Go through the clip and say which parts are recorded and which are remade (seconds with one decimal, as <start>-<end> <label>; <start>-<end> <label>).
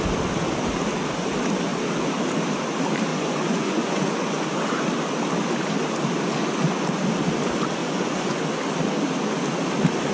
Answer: 0.0-3.1 recorded; 3.1-4.4 remade; 4.4-7.8 recorded; 7.8-8.4 remade; 8.4-10.1 recorded